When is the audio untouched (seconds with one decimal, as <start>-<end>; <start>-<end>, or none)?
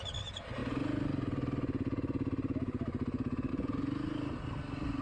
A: 0.0-5.0